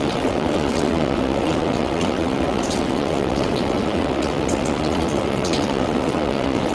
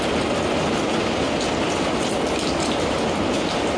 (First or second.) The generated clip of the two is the first